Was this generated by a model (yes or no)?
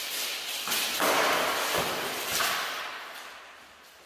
no